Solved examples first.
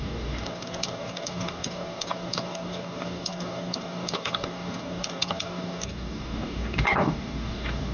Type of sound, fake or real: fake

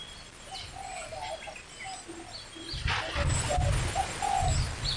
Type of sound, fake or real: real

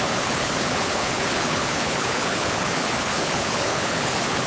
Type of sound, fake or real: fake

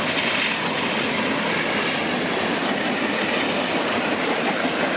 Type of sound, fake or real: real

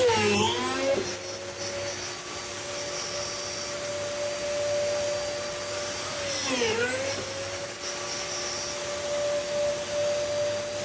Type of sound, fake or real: real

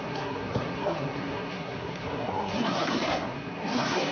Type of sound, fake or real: fake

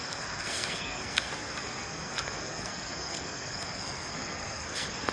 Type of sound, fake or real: fake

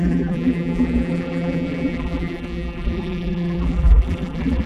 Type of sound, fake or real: fake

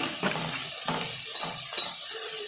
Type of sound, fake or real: real